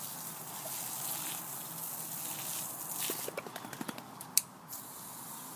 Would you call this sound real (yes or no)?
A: yes